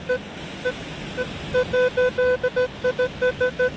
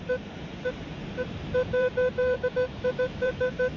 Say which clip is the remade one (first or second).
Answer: second